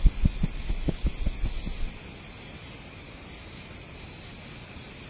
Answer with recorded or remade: recorded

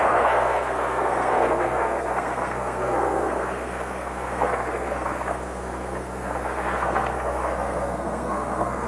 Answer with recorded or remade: remade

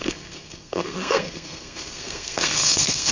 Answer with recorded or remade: remade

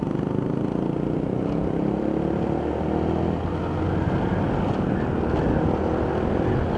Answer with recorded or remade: recorded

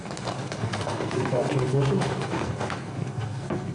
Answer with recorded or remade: remade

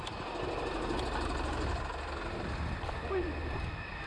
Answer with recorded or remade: recorded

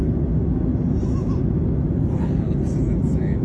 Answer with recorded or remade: recorded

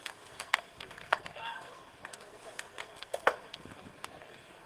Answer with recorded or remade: remade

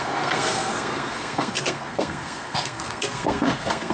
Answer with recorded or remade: remade